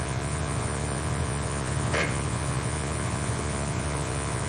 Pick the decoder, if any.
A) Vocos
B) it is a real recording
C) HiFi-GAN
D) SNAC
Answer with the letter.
A